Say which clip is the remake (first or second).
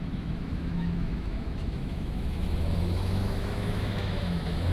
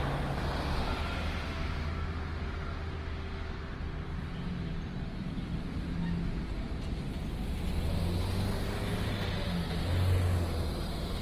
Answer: first